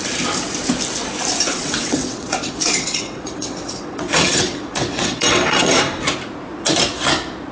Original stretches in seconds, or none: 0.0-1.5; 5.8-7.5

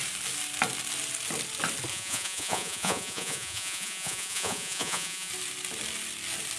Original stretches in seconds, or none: 0.0-1.9; 5.3-6.6

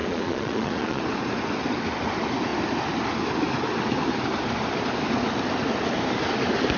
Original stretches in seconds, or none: 1.0-6.8

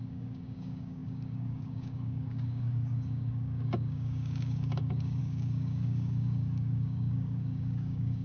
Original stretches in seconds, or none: none

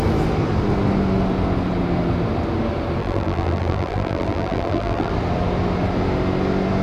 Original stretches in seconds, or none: 0.0-3.0; 5.1-6.8

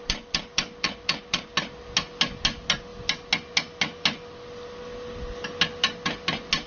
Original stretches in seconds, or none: 0.0-6.7

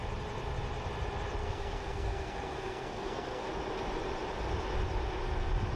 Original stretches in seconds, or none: 0.0-1.4; 3.5-5.8